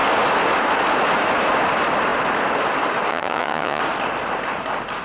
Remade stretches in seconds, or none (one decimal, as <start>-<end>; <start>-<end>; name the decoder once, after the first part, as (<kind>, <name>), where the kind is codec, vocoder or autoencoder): 3.1-3.8 (vocoder, HiFi-GAN)